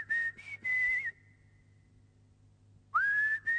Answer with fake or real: real